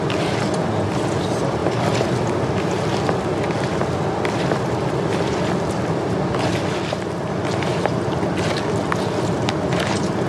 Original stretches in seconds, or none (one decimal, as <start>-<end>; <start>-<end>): 0.0-7.7; 8.3-10.3